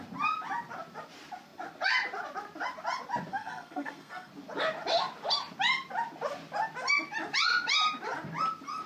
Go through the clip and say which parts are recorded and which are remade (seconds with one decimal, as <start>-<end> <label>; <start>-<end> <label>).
0.0-3.3 recorded; 3.3-4.3 remade; 4.3-8.9 recorded